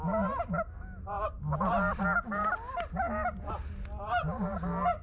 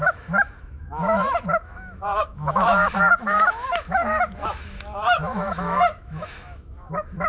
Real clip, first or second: first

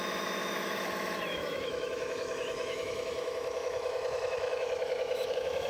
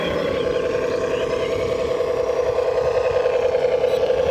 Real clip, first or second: second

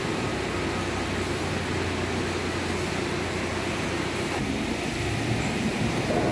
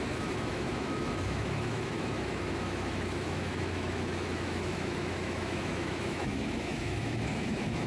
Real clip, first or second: first